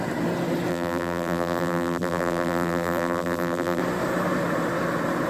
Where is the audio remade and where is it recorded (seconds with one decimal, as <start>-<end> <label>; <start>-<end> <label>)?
0.0-0.7 recorded; 0.7-3.8 remade; 3.8-5.3 recorded